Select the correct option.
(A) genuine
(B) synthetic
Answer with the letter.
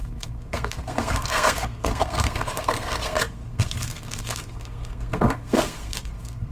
B